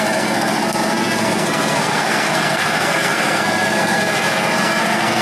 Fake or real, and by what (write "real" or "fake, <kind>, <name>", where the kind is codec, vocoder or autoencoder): fake, codec, SNAC